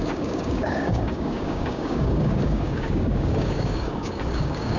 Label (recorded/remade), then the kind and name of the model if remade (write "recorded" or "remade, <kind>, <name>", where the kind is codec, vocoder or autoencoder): remade, codec, DAC